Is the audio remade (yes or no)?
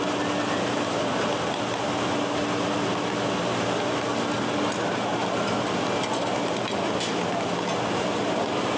no